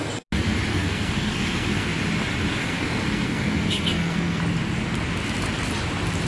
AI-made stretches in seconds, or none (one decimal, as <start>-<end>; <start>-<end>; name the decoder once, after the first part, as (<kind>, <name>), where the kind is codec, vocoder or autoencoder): 0.7-1.9 (codec, SNAC); 2.6-4.4